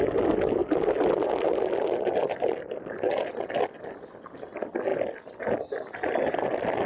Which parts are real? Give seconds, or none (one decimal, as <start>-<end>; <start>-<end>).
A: 0.0-6.9